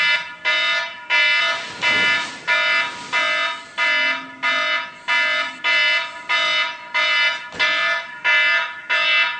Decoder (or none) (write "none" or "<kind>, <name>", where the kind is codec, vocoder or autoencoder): none